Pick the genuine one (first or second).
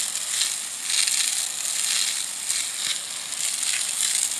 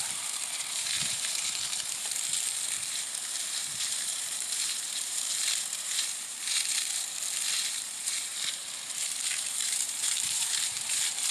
first